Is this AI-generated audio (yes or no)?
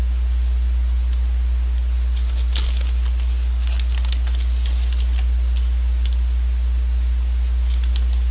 no